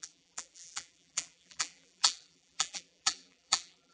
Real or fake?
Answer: fake